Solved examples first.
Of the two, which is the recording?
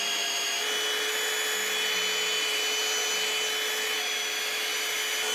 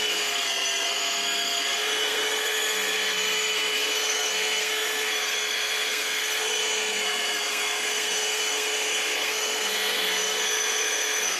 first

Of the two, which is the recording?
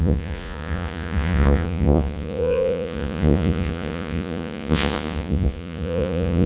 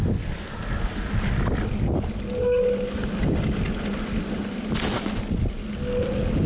second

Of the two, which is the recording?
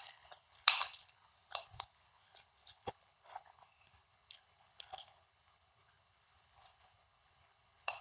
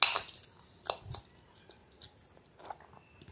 second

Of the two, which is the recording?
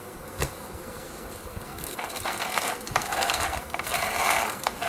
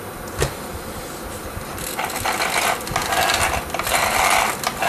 second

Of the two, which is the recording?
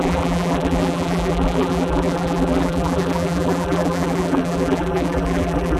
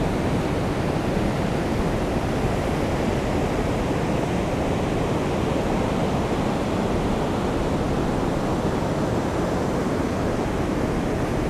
second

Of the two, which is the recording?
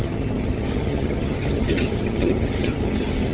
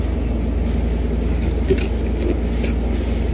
second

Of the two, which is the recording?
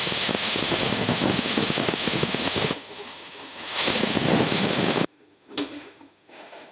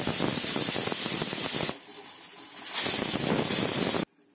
second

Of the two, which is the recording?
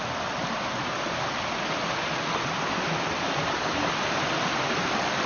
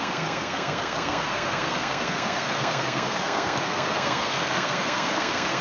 first